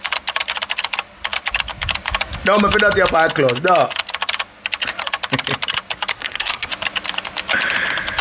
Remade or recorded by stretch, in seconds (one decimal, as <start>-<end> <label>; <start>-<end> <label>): 0.0-6.1 recorded; 6.1-6.7 remade; 6.7-8.2 recorded